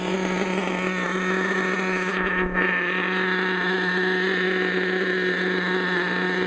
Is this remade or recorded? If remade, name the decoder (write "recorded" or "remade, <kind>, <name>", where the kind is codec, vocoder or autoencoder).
recorded